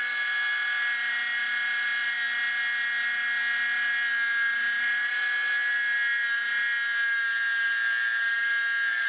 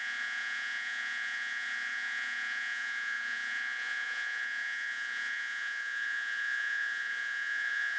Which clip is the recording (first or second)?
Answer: first